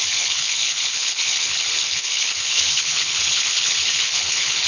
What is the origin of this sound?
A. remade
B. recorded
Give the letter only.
A